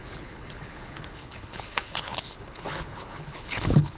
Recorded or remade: remade